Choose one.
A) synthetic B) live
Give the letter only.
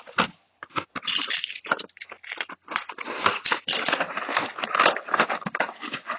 B